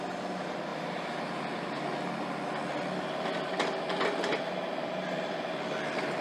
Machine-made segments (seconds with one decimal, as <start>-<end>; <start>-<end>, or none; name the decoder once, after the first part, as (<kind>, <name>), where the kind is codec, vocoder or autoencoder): none